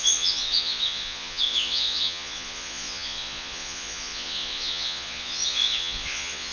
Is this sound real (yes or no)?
no